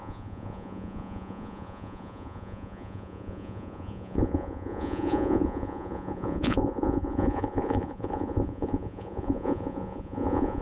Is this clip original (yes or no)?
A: no